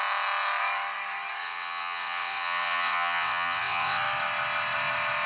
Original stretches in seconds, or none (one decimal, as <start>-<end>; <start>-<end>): 0.0-1.4; 4.0-5.3